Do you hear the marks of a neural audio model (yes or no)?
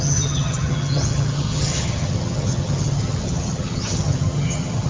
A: yes